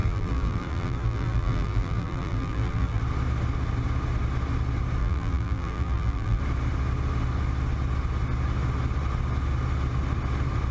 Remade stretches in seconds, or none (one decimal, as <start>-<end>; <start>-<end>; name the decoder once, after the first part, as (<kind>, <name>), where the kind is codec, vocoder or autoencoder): 0.0-3.0 (vocoder, BigVGAN v2); 5.0-6.4

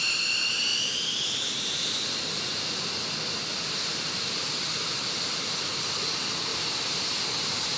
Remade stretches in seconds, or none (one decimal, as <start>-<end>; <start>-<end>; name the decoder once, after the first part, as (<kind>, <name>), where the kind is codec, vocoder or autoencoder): 0.7-1.9 (vocoder, BigVGAN v2); 3.9-4.6; 6.5-7.2

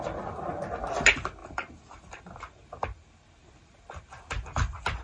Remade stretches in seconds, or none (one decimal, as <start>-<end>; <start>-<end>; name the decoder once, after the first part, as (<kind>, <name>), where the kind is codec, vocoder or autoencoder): 1.4-4.1 (vocoder, BigVGAN v2)